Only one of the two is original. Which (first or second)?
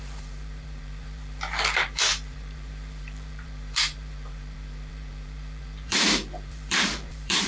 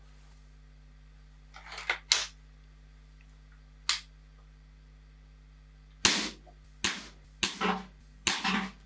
second